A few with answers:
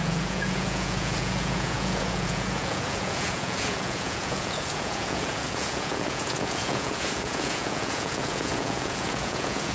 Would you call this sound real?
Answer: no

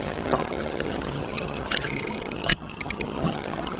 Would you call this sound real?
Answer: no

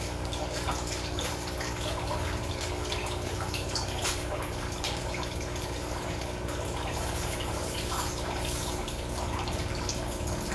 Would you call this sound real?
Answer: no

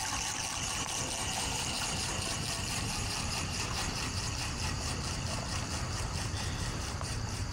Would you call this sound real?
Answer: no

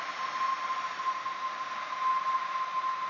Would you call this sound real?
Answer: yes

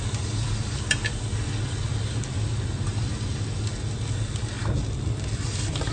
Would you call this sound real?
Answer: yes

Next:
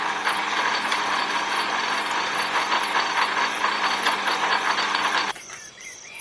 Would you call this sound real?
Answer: no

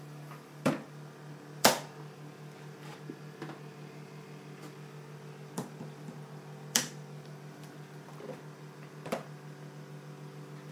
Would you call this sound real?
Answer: no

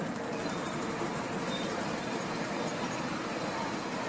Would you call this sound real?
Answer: no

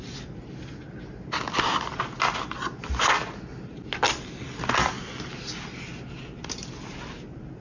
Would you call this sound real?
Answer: yes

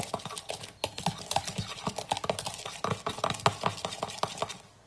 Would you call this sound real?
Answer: yes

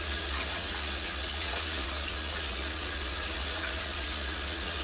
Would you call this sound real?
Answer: no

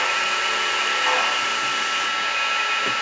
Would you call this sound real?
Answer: yes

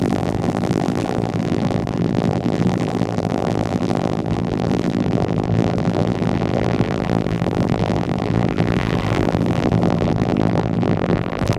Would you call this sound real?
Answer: no